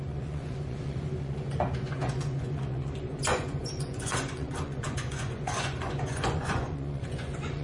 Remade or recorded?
remade